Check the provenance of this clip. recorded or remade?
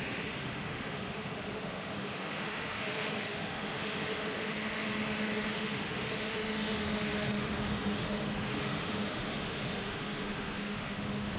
remade